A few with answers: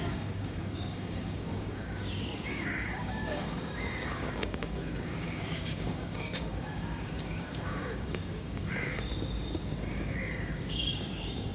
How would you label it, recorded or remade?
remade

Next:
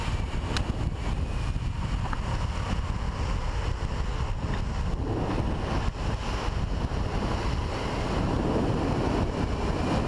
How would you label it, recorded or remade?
recorded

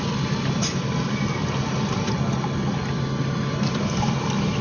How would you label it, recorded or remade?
recorded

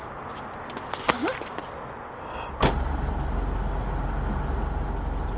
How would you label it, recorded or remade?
recorded